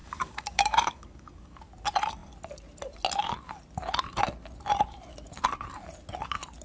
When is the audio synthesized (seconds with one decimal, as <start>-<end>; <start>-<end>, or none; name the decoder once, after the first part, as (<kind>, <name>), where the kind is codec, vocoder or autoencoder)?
0.0-1.6 (codec, DAC)